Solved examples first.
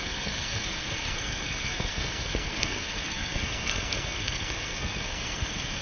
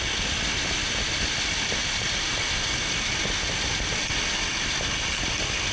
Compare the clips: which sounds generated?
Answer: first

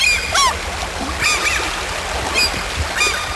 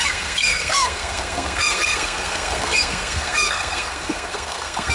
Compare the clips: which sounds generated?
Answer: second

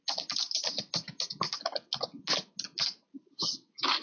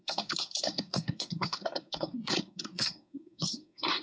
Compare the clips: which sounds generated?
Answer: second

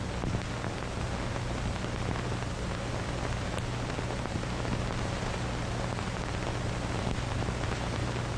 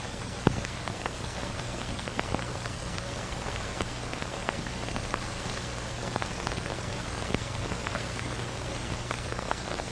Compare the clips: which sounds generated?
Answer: second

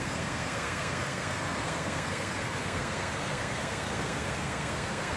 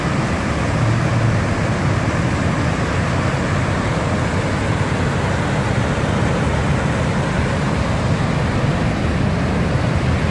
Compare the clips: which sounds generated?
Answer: first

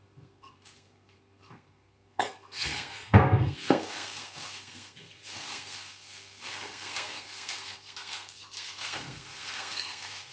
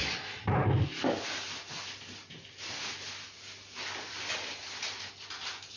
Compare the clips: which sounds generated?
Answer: first